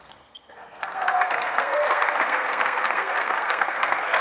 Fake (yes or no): yes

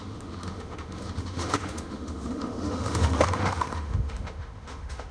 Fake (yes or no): yes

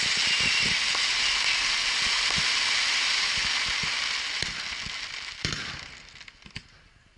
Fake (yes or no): no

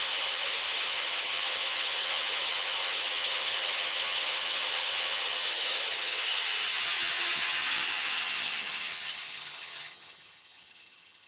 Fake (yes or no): yes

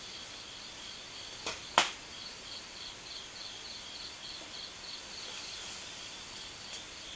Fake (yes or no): no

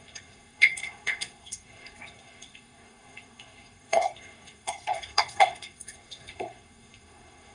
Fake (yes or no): yes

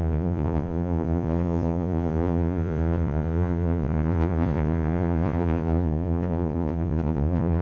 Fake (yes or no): yes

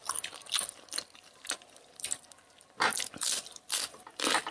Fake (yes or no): no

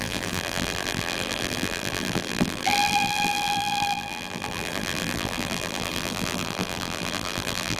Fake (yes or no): yes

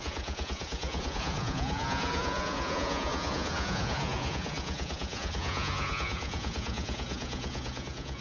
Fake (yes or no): yes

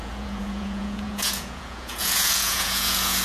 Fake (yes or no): yes